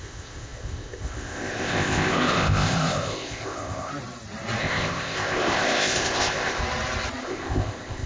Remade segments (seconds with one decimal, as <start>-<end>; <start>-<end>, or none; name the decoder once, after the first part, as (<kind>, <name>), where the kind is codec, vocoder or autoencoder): 0.0-3.9 (codec, ZipCodec); 4.6-6.6; 7.2-8.1